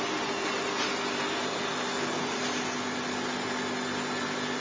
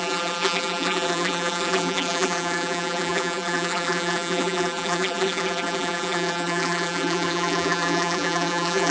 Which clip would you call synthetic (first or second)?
second